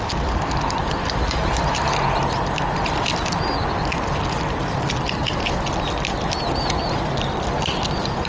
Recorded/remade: recorded